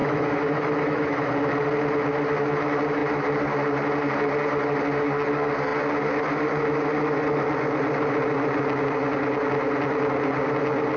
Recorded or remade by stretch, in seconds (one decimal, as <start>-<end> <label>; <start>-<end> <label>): 0.0-1.3 remade; 1.3-11.0 recorded